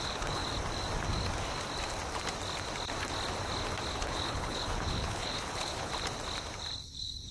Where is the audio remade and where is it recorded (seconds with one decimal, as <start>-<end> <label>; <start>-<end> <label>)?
0.0-0.4 remade; 0.4-3.9 recorded; 3.9-5.9 remade; 5.9-6.8 recorded; 6.8-7.3 remade

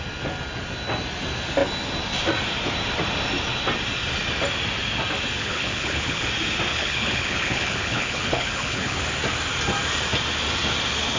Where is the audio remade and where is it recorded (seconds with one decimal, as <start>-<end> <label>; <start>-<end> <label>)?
0.0-5.4 recorded; 5.4-6.3 remade; 6.3-6.7 recorded; 6.7-9.0 remade; 9.0-11.2 recorded

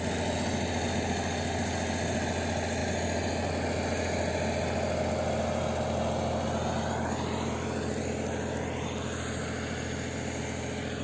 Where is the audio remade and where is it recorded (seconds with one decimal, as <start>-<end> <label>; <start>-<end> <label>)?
0.0-11.0 recorded

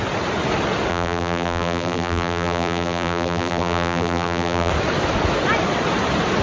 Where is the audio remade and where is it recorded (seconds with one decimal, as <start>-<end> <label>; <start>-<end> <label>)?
0.0-0.9 recorded; 0.9-4.7 remade; 4.7-6.4 recorded

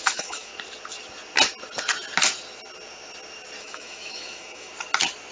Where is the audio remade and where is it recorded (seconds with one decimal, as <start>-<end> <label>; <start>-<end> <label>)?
0.0-0.5 remade; 0.5-3.6 recorded; 3.6-4.7 remade; 4.7-5.3 recorded

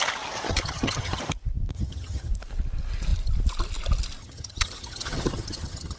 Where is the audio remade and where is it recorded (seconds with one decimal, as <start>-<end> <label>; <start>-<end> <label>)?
0.0-0.5 recorded; 0.5-1.2 remade; 1.2-1.7 recorded; 1.7-2.3 remade; 2.3-4.2 recorded; 4.2-6.0 remade

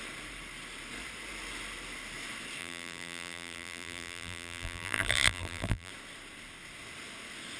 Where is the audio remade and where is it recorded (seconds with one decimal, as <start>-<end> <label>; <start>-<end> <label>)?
0.0-2.6 recorded; 2.6-5.9 remade; 5.9-7.6 recorded